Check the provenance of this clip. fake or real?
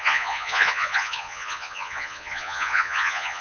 fake